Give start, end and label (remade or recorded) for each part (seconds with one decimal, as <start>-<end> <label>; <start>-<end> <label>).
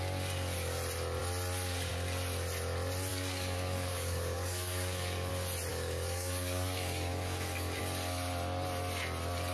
0.0-3.1 recorded; 3.1-5.3 remade; 5.3-5.7 recorded; 5.7-7.8 remade; 7.8-9.5 recorded